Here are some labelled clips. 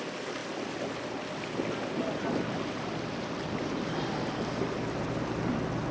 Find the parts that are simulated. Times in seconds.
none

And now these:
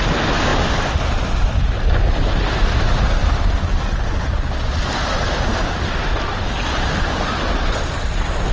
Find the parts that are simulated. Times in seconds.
none

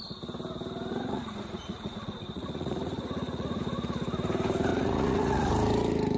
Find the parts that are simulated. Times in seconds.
0.9-3.6 (vocoder, Vocos); 4.7-5.5

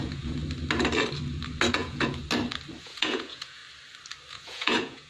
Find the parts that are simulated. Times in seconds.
0.0-0.4 (vocoder, Vocos); 1.7-2.2; 2.8-3.6; 4.3-5.1

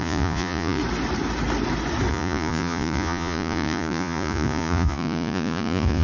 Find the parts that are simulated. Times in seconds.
0.0-0.8 (vocoder, Vocos); 2.1-6.0

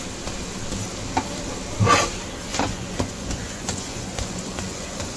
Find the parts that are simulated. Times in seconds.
2.5-5.2 (vocoder, Vocos)

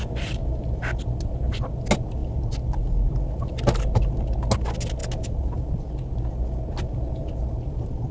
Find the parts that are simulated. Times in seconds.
none

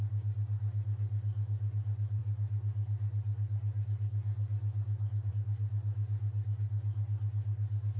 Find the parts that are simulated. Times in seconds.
none